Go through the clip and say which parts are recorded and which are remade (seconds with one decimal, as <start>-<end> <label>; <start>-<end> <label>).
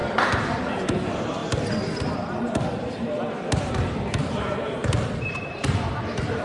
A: 0.0-1.4 remade; 1.4-3.0 recorded; 3.0-4.8 remade; 4.8-5.5 recorded; 5.5-6.4 remade